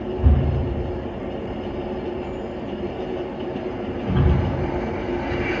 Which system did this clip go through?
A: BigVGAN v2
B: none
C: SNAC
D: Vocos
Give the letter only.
B